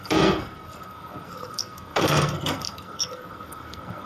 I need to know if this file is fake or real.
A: fake